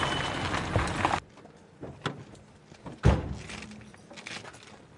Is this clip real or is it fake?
real